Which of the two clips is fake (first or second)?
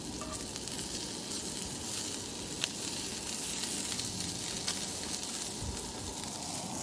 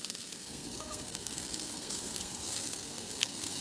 second